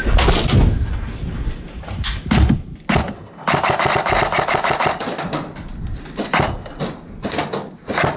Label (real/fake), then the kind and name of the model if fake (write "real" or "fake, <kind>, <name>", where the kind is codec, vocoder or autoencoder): real